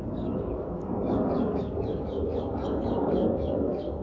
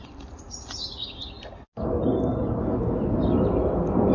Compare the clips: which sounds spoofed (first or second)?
first